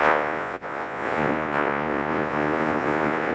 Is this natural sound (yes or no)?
no